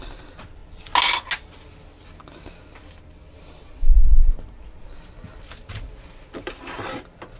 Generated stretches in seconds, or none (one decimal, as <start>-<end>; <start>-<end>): none